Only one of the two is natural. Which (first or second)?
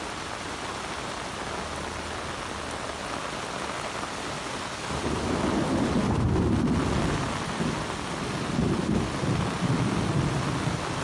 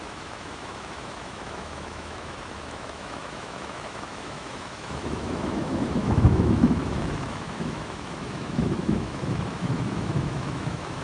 first